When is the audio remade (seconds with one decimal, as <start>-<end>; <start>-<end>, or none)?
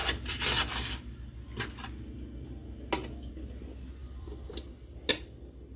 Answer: 4.0-5.1